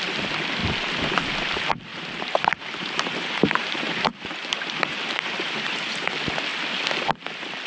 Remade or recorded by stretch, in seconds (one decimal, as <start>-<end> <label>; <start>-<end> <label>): 0.0-1.9 recorded; 1.9-6.1 remade; 6.1-7.7 recorded